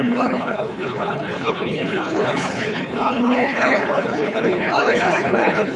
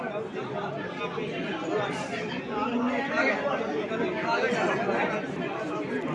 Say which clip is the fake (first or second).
first